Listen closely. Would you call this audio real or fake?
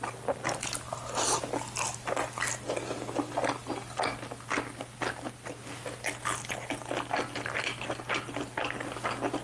real